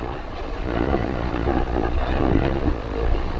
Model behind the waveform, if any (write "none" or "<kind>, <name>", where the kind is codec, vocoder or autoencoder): vocoder, Vocos